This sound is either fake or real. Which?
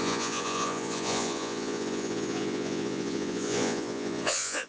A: fake